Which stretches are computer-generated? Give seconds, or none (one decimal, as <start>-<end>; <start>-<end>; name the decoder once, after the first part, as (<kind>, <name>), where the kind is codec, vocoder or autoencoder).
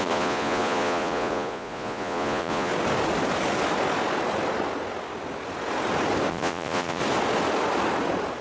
0.0-2.7 (vocoder, Vocos); 6.3-7.0